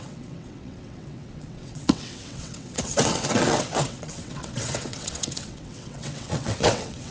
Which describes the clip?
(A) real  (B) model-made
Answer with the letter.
B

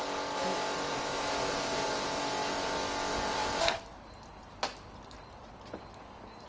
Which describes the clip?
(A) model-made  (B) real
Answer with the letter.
B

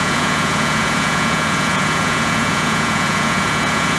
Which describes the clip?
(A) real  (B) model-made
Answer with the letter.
B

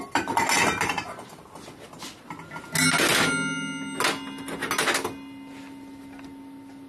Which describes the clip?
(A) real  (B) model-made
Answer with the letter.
A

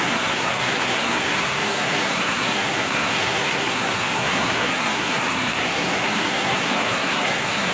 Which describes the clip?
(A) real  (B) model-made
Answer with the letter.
B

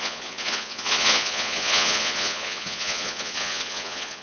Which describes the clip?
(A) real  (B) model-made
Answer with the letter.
B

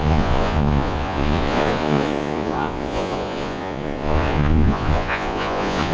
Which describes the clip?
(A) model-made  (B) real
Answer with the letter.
A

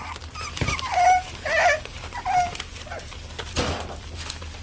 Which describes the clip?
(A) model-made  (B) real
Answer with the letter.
B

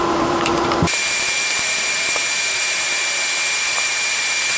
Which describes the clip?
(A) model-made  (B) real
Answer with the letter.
A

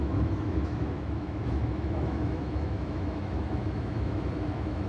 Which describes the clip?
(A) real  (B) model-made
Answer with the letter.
B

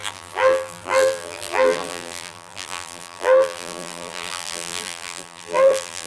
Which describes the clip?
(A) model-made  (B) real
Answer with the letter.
A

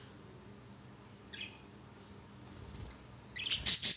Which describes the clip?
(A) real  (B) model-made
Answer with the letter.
A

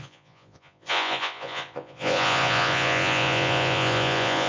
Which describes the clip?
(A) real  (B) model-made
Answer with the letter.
B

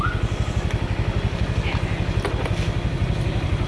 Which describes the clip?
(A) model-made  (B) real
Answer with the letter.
B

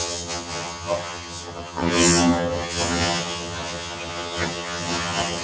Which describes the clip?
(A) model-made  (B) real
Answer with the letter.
A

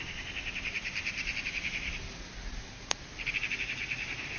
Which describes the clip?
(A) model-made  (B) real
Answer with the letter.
B